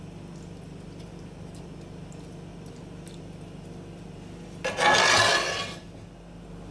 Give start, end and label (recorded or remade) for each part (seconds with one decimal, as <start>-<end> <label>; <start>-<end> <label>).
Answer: 0.0-6.7 recorded